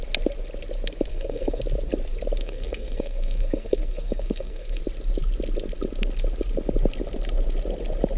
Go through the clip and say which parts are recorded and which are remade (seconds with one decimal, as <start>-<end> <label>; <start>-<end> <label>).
0.0-1.1 recorded; 1.1-1.6 remade; 1.6-2.4 recorded; 2.4-4.8 remade; 4.8-8.2 recorded